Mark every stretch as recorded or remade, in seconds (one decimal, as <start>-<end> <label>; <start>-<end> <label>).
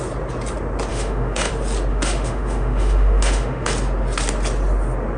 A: 0.0-0.9 recorded; 0.9-1.5 remade; 1.5-1.9 recorded; 1.9-3.7 remade; 3.7-5.2 recorded